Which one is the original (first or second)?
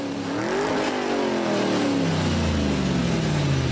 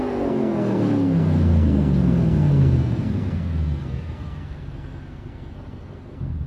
first